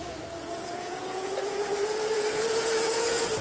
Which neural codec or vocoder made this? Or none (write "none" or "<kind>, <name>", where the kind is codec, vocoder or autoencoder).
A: vocoder, Vocos